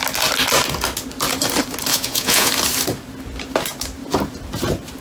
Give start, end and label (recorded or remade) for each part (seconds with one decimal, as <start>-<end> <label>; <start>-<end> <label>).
0.0-1.9 recorded; 1.9-2.5 remade; 2.5-5.0 recorded